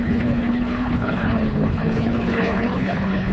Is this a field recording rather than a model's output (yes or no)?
no